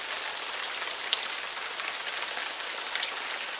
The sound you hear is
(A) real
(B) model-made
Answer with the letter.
A